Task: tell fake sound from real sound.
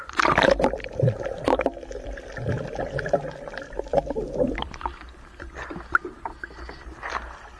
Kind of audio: fake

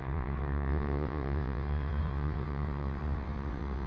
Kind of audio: fake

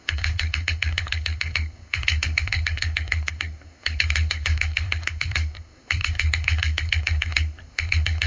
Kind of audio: fake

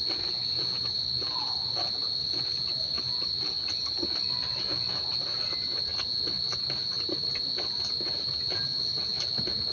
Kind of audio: real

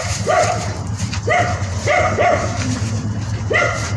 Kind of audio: fake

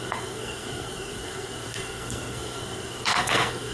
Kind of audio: fake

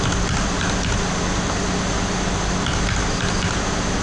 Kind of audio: real